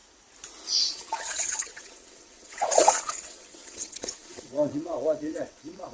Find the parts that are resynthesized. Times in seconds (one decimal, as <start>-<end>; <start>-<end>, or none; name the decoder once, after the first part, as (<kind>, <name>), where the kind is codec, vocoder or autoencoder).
0.9-5.9 (vocoder, WaveNeXt)